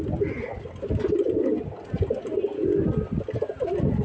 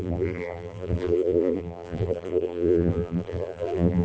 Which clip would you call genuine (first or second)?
first